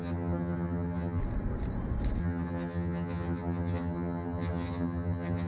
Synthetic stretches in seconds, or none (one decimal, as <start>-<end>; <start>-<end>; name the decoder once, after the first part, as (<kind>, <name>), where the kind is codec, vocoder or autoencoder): 0.0-1.2 (vocoder, HiFi-GAN); 2.2-5.5